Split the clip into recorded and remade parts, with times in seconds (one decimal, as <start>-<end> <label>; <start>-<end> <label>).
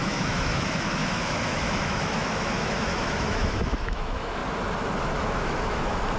0.0-4.4 remade; 4.4-5.0 recorded; 5.0-6.2 remade